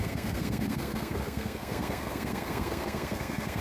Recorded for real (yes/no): no